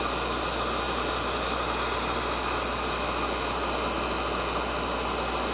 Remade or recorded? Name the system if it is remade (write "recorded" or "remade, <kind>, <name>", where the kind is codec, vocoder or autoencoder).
recorded